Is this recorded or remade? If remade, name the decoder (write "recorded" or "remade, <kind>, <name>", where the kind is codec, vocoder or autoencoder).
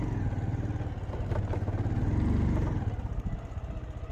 recorded